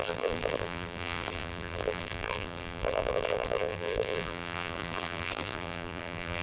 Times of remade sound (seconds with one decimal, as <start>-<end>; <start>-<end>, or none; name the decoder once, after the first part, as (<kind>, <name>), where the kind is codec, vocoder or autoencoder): 0.0-6.4 (vocoder, BigVGAN v2)

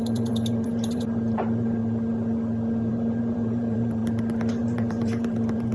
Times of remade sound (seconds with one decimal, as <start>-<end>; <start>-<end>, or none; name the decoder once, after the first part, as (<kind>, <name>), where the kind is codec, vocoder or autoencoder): 0.0-1.8 (vocoder, BigVGAN v2); 2.9-4.0; 4.5-5.7

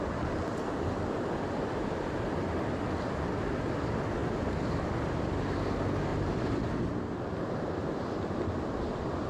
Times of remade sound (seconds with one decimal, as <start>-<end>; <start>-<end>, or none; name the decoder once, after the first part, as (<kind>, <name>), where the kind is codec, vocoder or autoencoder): 6.1-6.8 (vocoder, BigVGAN v2)